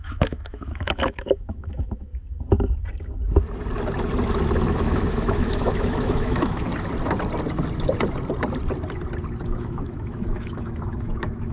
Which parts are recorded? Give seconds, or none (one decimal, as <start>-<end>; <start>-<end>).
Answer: 2.1-4.7; 6.7-9.4